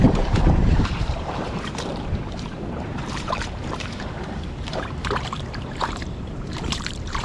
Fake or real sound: fake